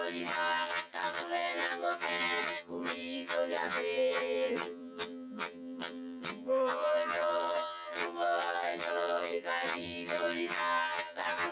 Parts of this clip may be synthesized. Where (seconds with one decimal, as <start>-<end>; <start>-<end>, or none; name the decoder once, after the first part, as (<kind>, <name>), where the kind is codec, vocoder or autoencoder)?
0.0-11.5 (vocoder, HiFi-GAN)

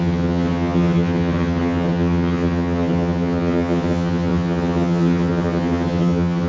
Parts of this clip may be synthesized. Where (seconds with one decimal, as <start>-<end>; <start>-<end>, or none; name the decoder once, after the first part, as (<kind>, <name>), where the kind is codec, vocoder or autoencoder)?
0.0-6.5 (vocoder, HiFi-GAN)

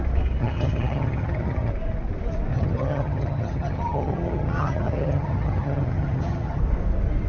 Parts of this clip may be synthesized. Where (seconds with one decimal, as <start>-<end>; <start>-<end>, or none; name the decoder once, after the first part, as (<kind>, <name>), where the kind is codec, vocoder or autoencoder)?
0.4-1.7 (vocoder, HiFi-GAN); 2.5-6.6

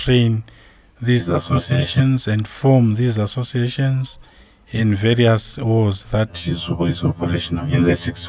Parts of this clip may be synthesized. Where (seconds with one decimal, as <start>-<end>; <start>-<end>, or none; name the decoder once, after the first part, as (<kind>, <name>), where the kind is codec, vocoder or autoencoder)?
1.2-2.0 (vocoder, HiFi-GAN); 6.3-8.3

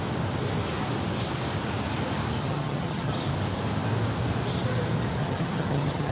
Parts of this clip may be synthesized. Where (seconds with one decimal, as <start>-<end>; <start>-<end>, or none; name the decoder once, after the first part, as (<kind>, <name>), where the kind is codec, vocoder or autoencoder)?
2.4-3.1 (vocoder, HiFi-GAN); 5.2-6.1